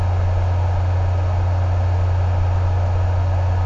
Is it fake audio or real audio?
real